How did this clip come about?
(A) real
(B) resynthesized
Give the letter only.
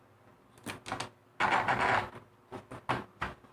A